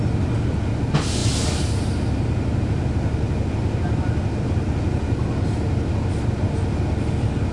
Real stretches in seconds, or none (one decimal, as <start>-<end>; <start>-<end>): 0.0-7.5